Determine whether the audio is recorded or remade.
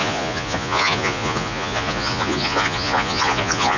remade